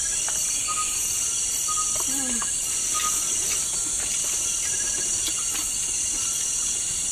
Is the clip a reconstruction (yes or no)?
no